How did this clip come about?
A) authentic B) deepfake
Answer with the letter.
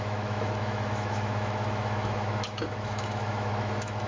B